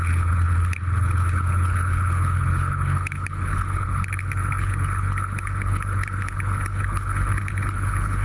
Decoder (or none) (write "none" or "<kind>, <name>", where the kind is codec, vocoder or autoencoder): codec, HILCodec